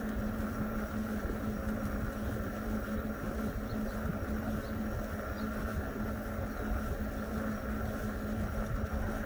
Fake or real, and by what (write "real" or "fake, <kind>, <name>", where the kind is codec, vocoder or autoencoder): real